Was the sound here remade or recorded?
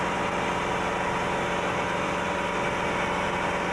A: recorded